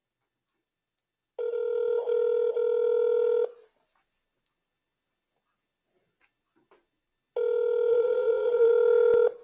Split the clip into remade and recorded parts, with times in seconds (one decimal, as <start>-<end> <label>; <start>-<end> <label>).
0.0-7.9 recorded; 7.9-8.7 remade; 8.7-9.4 recorded